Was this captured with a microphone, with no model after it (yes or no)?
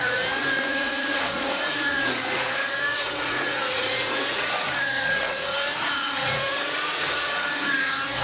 no